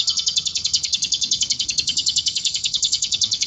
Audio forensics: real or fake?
fake